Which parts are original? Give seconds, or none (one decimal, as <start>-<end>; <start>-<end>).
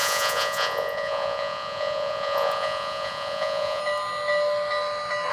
3.8-5.3